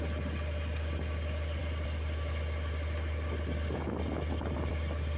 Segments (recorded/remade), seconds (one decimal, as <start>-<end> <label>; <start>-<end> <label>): 0.0-5.2 recorded